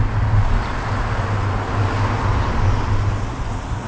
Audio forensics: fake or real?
real